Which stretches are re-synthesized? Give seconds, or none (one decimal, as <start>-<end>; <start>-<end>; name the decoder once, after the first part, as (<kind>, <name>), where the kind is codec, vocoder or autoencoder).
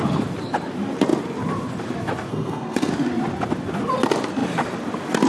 2.3-2.9 (codec, SNAC)